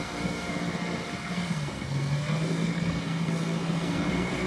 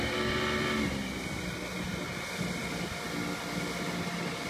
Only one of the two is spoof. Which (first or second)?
first